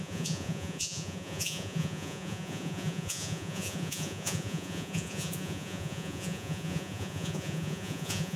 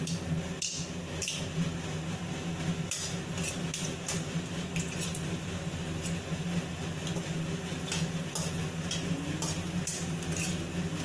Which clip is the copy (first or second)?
first